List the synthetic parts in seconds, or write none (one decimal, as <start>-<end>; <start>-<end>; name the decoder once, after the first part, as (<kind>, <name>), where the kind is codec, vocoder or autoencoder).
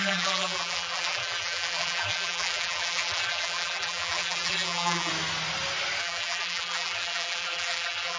0.0-5.1 (vocoder, BigVGAN v2); 6.0-8.2